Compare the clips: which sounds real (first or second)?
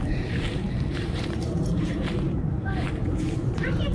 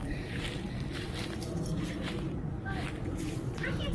second